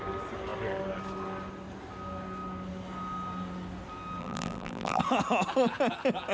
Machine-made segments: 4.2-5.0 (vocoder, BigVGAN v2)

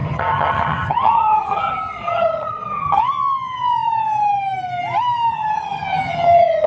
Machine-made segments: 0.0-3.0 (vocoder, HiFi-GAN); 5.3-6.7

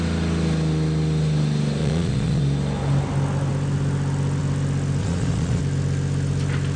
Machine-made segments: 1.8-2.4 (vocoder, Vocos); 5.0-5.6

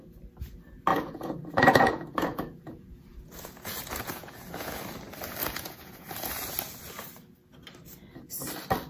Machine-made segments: 0.9-4.8 (vocoder, Vocos); 5.4-6.3